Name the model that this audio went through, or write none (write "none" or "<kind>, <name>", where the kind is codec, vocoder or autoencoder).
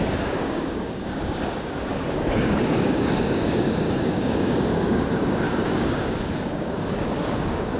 codec, DAC